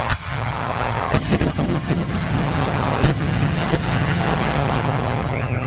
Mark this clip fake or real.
fake